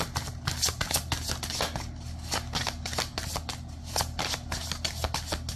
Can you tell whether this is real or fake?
real